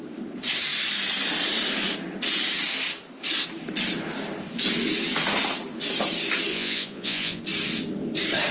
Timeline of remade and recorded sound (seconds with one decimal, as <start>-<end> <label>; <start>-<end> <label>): 0.0-6.5 recorded; 6.5-7.4 remade; 7.4-8.5 recorded